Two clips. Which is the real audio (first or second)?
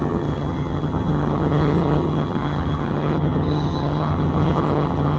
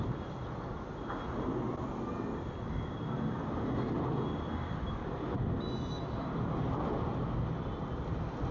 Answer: second